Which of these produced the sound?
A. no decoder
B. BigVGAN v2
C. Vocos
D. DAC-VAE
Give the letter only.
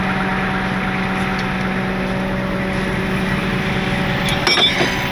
A